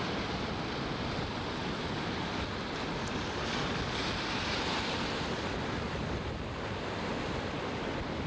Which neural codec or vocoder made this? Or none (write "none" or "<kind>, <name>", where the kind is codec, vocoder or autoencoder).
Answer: none